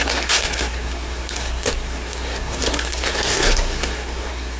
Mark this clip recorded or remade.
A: remade